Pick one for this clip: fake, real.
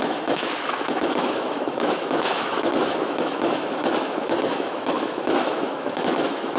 fake